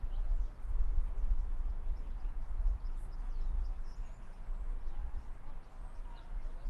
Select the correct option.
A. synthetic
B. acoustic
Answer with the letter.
B